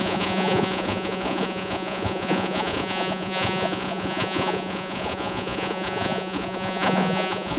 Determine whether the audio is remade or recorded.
remade